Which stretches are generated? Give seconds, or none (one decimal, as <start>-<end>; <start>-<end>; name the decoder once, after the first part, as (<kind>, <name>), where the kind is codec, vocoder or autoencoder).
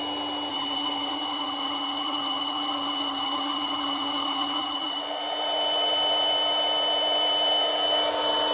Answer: 0.5-5.0 (vocoder, HiFi-GAN)